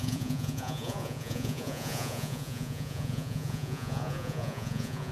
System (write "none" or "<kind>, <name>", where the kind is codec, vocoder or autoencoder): vocoder, Vocos